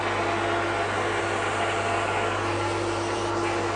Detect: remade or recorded recorded